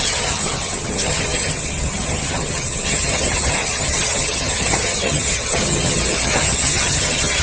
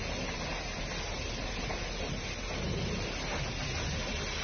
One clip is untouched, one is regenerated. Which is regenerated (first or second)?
first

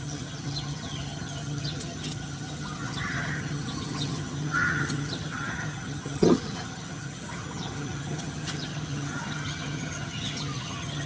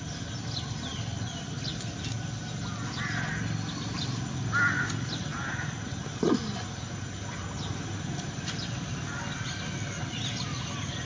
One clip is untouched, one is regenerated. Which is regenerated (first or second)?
first